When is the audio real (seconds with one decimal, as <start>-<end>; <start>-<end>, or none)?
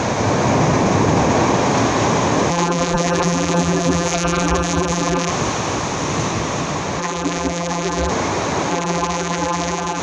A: 0.0-2.5; 5.3-7.0; 8.1-8.7